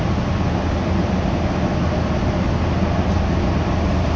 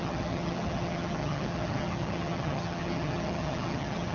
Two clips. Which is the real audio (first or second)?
first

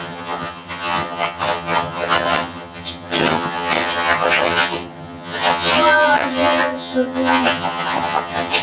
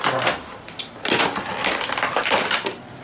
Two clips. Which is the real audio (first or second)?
second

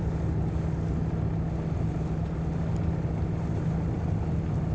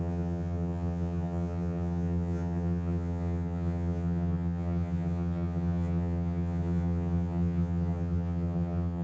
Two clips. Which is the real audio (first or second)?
first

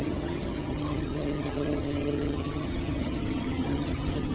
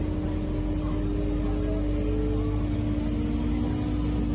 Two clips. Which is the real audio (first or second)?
second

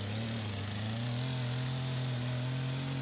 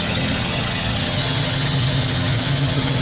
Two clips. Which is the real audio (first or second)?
first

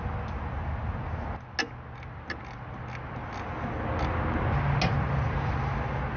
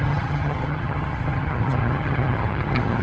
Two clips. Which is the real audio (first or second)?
first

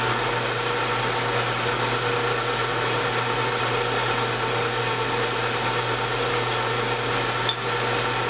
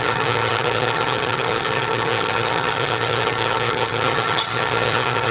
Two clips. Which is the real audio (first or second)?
first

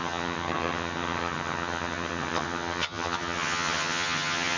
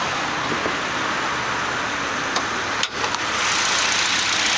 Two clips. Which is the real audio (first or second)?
second